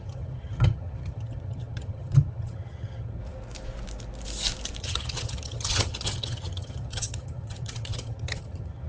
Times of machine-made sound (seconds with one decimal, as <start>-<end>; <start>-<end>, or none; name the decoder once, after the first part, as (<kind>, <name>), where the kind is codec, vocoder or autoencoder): 0.0-3.2 (vocoder, HiFi-GAN); 4.8-8.9